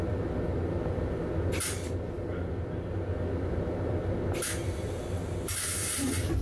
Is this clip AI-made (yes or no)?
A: no